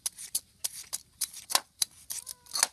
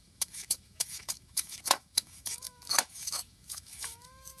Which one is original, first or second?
first